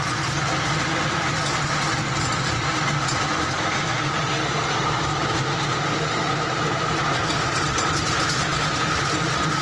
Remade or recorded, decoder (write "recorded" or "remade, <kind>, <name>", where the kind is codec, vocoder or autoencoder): recorded